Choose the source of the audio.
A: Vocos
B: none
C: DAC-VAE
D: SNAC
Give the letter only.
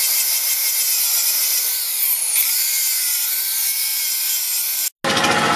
B